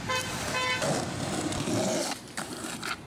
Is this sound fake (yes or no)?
no